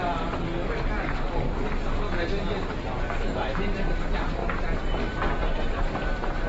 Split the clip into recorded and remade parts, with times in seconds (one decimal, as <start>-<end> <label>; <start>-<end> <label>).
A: 0.0-0.5 remade; 0.5-3.2 recorded; 3.2-4.4 remade; 4.4-5.4 recorded; 5.4-6.5 remade